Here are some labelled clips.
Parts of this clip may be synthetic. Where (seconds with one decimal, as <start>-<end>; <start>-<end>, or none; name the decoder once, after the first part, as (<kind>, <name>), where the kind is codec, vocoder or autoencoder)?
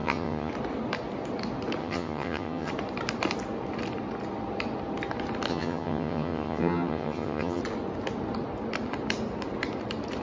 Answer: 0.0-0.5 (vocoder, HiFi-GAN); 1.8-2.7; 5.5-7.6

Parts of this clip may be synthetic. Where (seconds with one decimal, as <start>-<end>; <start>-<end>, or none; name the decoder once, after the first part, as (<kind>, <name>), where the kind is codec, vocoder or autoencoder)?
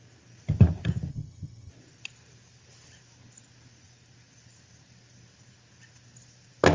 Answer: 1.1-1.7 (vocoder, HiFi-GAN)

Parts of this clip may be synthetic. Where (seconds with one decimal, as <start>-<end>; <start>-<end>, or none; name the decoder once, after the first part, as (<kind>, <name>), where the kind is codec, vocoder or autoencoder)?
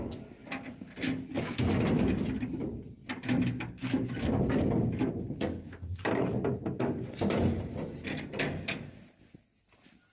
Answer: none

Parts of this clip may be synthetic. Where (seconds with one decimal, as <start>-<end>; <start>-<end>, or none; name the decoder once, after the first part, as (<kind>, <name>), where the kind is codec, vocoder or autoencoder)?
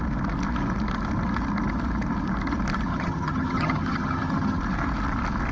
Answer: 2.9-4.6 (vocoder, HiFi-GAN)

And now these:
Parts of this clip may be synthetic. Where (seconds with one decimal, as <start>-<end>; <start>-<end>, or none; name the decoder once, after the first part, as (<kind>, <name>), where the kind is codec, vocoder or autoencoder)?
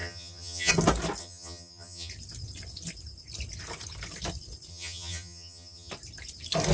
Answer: 0.0-0.7 (vocoder, HiFi-GAN); 1.2-2.1; 4.7-5.9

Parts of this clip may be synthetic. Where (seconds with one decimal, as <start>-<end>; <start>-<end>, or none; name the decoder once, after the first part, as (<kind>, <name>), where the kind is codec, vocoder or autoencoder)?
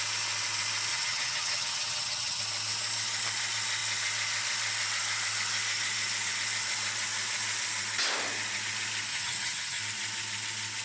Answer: 0.9-2.4 (vocoder, HiFi-GAN); 9.1-9.8